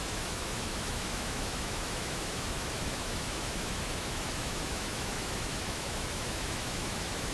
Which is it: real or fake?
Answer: fake